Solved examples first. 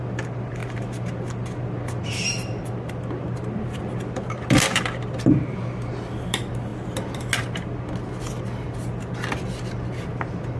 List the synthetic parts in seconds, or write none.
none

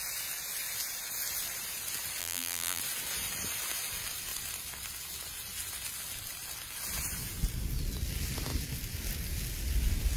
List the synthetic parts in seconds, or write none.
2.2-2.8 (vocoder, BigVGAN v2)